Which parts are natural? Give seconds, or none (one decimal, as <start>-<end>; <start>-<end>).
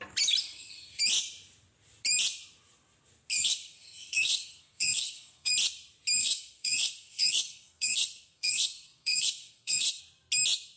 0.0-0.4; 1.0-3.3; 5.5-6.2; 10.0-10.8